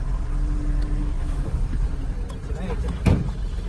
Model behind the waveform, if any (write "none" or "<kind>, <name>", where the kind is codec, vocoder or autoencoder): none